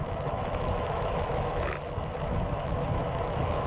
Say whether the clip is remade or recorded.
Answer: remade